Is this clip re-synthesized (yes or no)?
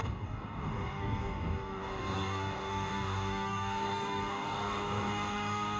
yes